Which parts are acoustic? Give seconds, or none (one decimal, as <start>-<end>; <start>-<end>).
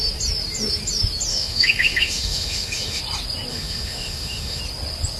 0.0-1.3; 3.0-3.5; 4.6-5.2